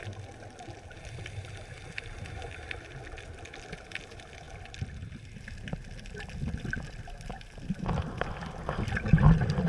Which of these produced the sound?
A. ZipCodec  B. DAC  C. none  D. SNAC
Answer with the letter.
C